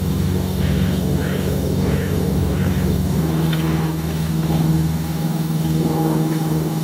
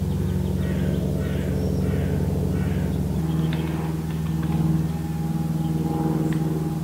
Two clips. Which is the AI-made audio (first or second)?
first